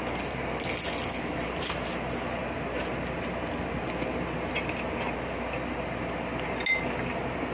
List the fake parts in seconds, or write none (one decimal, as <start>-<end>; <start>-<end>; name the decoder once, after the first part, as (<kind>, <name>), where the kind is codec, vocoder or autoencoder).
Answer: none